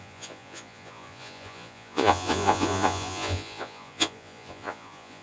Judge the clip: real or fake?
fake